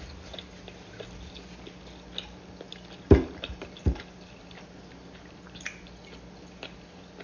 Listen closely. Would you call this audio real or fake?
real